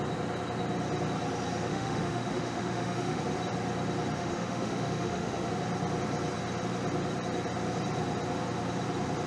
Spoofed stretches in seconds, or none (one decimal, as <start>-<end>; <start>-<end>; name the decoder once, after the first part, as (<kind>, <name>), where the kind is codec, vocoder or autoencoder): 1.7-3.2 (autoencoder, DAC-VAE); 4.2-5.5